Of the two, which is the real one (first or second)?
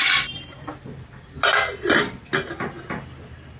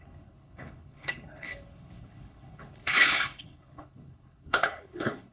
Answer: first